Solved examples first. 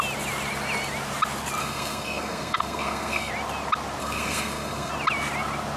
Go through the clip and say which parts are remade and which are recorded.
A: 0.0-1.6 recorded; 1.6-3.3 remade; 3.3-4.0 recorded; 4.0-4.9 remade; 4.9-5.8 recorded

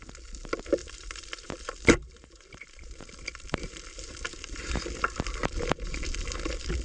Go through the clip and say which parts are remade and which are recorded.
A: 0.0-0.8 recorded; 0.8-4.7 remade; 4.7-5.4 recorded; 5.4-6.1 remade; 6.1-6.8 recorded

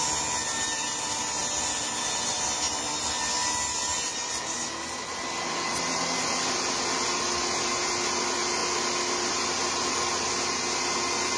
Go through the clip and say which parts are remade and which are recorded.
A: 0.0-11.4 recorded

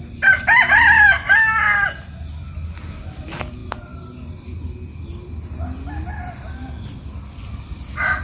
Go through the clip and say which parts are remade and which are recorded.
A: 0.0-8.2 recorded

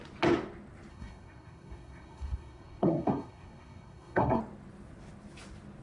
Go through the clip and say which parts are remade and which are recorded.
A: 0.0-0.9 recorded; 0.9-4.4 remade; 4.4-5.8 recorded

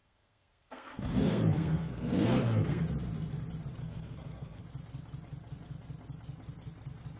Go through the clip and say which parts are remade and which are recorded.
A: 0.0-2.8 remade; 2.8-3.8 recorded; 3.8-4.6 remade; 4.6-7.2 recorded